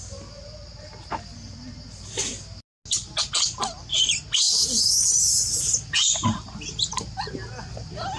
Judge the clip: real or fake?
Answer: real